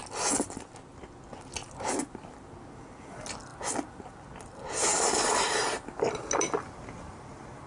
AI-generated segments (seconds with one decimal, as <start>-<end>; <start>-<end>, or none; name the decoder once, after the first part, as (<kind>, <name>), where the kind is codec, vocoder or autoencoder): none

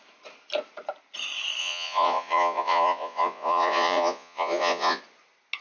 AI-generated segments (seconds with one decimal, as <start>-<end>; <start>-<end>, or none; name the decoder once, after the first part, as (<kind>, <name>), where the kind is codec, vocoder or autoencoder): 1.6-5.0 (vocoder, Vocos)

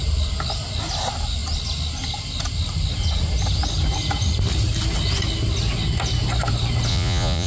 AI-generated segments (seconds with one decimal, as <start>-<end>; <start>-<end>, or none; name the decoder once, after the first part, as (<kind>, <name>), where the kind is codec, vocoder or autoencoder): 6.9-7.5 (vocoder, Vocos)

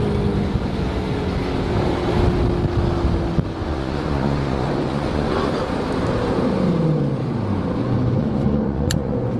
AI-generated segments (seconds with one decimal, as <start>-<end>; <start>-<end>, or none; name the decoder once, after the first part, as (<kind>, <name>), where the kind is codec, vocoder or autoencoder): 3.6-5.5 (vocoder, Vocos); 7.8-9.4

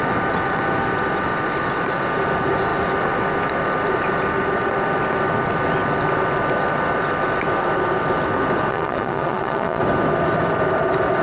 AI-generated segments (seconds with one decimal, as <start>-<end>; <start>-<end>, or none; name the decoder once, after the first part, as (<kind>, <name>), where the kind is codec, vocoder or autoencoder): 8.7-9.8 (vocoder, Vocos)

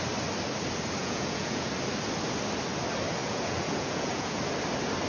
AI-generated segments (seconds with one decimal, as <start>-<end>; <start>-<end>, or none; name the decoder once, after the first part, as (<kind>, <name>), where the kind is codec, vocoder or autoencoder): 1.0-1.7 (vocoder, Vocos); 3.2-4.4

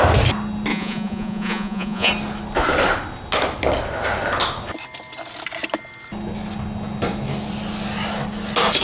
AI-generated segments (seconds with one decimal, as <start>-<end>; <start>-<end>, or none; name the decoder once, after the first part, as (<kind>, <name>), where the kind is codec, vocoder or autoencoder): 0.7-2.1 (vocoder, Vocos)

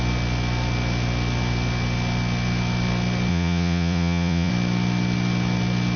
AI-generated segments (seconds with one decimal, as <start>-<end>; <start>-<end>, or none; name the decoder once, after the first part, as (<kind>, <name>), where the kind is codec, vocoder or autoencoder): 3.3-4.5 (vocoder, Vocos)